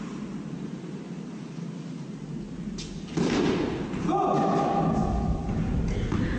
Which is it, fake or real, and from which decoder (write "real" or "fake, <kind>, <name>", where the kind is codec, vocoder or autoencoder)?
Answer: real